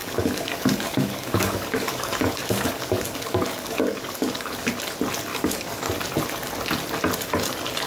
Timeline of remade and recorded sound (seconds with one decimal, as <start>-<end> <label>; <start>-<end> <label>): 0.0-4.7 remade; 4.7-5.3 recorded; 5.3-5.9 remade; 5.9-7.9 recorded